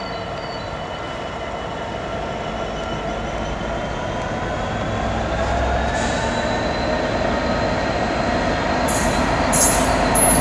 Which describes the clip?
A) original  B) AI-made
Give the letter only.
A